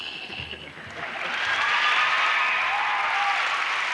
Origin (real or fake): real